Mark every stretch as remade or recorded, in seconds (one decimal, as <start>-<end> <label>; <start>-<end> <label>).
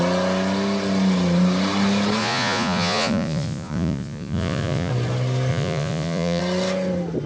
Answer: 0.0-2.2 recorded; 2.2-4.9 remade; 4.9-5.5 recorded; 5.5-6.4 remade; 6.4-7.3 recorded